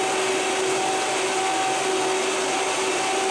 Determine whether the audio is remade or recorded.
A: recorded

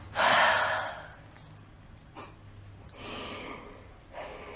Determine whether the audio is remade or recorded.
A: recorded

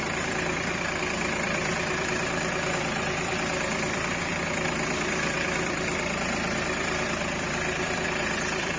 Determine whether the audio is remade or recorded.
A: remade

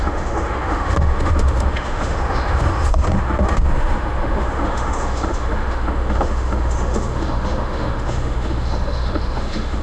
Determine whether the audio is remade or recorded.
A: remade